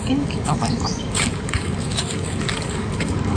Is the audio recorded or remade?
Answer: remade